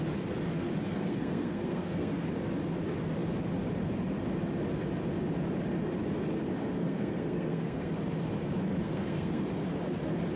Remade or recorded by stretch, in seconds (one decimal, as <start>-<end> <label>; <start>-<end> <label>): 0.0-0.9 recorded; 0.9-2.1 remade; 2.1-6.8 recorded; 6.8-7.9 remade; 7.9-8.8 recorded; 8.8-9.4 remade; 9.4-10.4 recorded